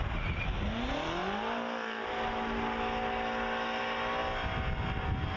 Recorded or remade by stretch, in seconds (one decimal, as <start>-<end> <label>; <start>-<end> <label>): 0.0-5.4 recorded